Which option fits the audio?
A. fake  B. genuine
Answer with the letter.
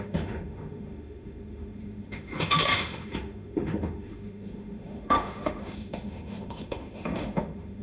A